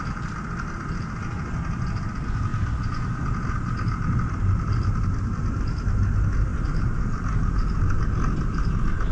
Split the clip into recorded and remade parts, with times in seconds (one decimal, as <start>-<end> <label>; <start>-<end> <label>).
0.0-6.5 recorded; 6.5-7.5 remade; 7.5-9.1 recorded